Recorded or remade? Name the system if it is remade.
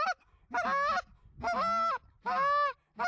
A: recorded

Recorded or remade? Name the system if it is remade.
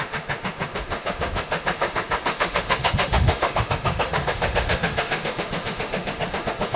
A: remade, autoencoder, DAC-VAE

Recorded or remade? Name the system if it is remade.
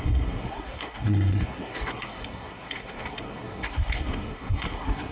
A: remade, codec, SNAC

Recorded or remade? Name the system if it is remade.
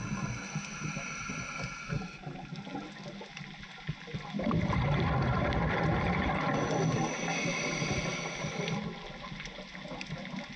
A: recorded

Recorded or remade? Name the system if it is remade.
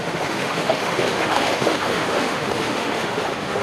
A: remade, autoencoder, DAC-VAE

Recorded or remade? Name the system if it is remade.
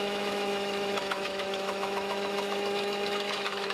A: remade, autoencoder, DAC-VAE